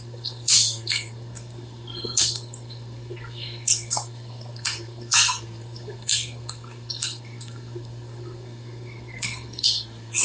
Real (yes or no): no